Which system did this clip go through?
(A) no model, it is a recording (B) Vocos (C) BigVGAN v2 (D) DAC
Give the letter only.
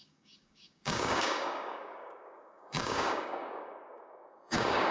D